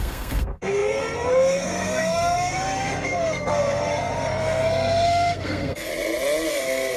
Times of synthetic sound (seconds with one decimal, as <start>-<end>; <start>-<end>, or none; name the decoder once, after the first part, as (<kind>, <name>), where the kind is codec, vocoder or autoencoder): 0.0-5.9 (codec, SNAC); 6.5-7.0